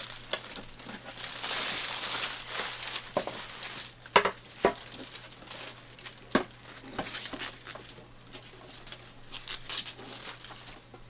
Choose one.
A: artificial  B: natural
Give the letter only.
B